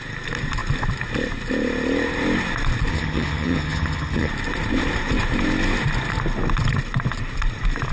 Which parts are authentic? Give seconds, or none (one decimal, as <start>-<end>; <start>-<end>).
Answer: 0.0-2.9; 4.3-7.9